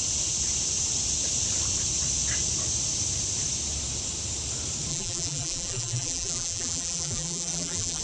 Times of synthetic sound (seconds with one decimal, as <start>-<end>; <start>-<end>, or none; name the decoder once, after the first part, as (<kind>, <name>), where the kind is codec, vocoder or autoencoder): 4.9-8.0 (vocoder, BigVGAN v2)